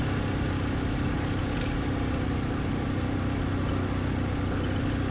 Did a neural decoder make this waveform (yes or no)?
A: no